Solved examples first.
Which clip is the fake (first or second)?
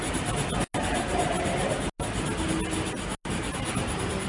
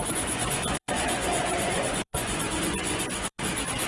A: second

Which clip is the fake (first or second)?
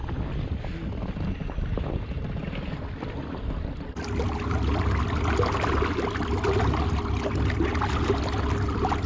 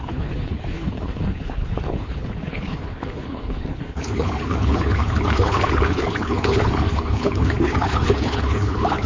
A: second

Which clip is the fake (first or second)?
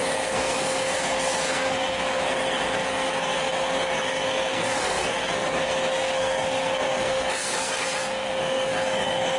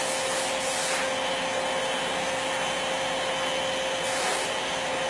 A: first